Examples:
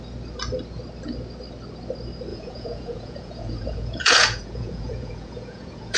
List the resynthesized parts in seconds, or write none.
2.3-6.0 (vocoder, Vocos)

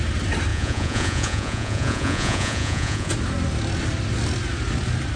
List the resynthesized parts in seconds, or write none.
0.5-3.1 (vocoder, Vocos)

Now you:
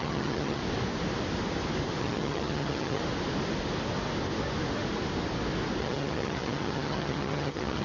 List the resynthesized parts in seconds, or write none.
0.0-0.6 (vocoder, HiFi-GAN); 2.0-3.0; 5.8-7.8

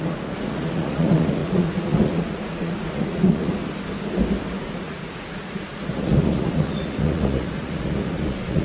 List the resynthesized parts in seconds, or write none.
0.0-3.6 (vocoder, Vocos); 4.6-8.6

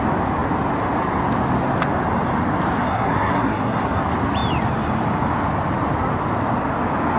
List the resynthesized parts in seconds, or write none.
2.8-4.0 (codec, SNAC)

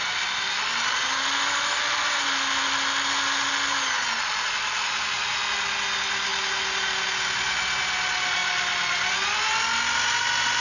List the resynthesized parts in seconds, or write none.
none